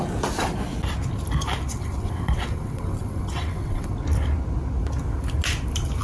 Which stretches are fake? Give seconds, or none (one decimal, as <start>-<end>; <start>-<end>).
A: 1.7-3.9